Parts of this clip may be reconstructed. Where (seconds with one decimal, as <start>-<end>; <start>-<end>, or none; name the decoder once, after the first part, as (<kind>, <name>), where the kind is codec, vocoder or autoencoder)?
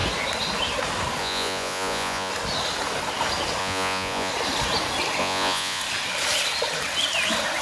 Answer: 1.2-2.3 (vocoder, Vocos); 3.6-4.3; 5.2-5.8